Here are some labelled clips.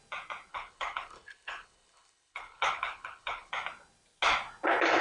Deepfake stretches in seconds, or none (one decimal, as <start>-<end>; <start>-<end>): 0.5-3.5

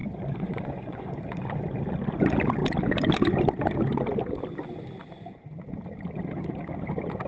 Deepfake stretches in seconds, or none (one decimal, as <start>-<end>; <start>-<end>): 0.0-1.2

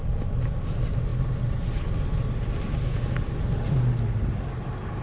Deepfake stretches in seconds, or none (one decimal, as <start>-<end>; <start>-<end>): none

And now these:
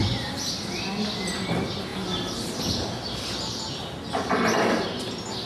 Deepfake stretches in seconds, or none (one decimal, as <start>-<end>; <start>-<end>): none

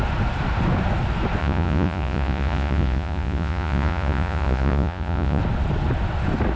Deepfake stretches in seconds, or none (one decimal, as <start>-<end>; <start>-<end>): 1.4-5.4

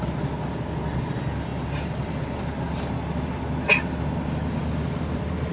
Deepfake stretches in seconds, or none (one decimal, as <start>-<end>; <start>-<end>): 1.5-2.4; 4.6-5.5